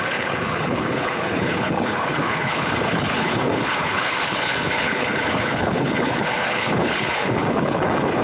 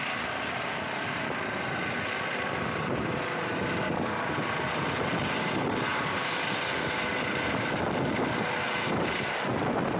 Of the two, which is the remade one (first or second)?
first